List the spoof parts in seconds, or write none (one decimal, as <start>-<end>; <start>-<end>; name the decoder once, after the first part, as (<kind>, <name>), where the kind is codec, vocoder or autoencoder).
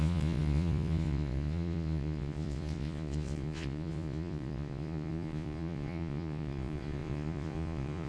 0.0-8.1 (vocoder, Vocos)